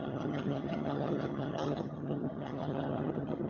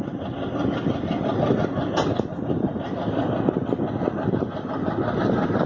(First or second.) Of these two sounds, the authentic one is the second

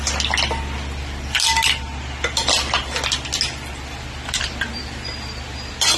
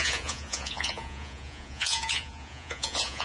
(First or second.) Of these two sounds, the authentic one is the first